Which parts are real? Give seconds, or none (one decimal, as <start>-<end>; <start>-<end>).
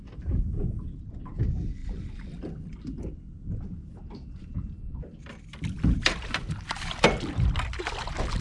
0.0-1.8; 3.0-8.4